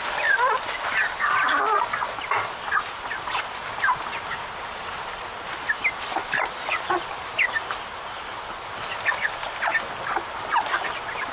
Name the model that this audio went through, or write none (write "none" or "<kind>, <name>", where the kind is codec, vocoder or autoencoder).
none